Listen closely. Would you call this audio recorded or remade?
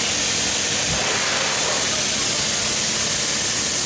recorded